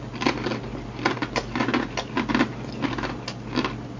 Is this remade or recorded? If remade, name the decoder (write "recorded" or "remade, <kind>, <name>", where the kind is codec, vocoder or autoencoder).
recorded